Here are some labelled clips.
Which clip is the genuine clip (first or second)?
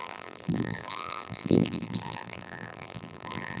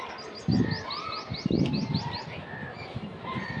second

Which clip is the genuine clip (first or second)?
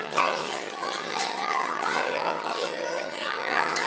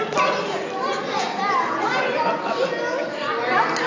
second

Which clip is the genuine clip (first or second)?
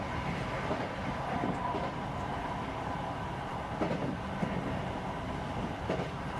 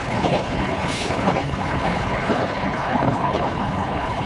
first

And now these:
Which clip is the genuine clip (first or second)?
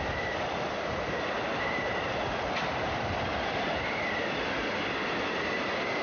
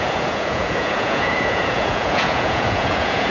first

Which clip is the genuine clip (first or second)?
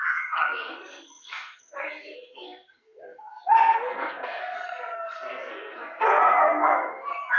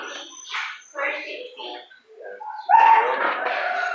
second